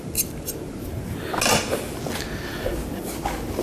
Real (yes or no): yes